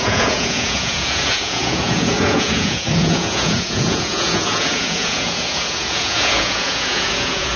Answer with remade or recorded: remade